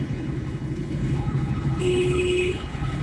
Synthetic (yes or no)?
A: yes